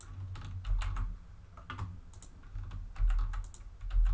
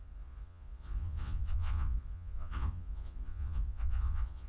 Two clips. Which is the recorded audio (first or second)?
first